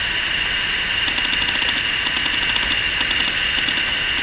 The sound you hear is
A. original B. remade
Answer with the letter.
A